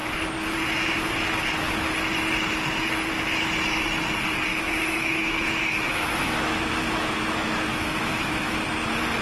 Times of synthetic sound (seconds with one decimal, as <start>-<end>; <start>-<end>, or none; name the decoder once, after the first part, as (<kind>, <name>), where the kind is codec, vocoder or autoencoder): 4.5-8.5 (autoencoder, DAC-VAE)